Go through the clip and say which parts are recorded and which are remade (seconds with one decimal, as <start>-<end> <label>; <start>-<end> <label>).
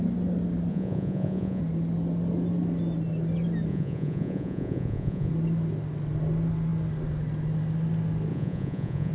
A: 0.0-0.7 recorded; 0.7-1.6 remade; 1.6-3.7 recorded; 3.7-5.3 remade; 5.3-8.3 recorded; 8.3-9.1 remade